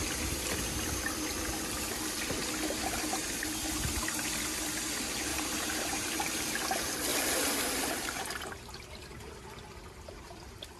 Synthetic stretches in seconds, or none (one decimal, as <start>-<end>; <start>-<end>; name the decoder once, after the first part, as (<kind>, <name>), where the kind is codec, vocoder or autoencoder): 5.3-6.4 (vocoder, BigVGAN v2); 7.1-8.5